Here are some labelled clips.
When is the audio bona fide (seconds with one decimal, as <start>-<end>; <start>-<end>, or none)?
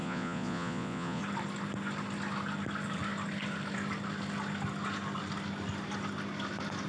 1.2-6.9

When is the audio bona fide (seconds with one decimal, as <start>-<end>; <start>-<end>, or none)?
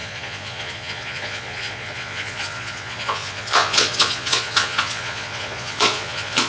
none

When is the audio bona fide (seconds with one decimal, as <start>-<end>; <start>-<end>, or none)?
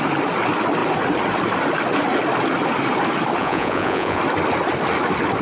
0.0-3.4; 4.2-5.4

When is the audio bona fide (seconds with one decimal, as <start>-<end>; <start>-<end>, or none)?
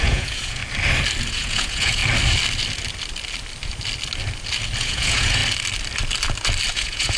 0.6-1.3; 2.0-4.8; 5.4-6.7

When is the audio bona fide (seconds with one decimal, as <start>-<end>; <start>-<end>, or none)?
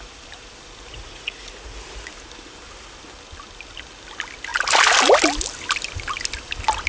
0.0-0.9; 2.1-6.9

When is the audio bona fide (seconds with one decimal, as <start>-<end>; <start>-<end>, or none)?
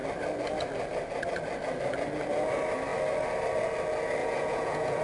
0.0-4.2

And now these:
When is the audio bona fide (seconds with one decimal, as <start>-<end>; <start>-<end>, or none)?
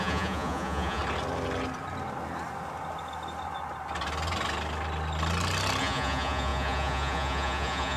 1.0-5.8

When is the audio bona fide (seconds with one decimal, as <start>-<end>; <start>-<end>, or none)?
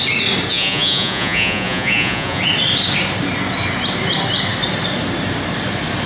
0.0-0.5; 2.4-6.1